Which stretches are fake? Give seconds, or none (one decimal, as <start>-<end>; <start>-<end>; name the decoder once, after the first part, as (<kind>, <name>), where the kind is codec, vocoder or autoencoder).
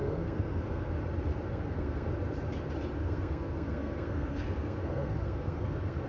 0.0-0.9 (codec, SNAC); 1.5-2.1; 3.0-6.1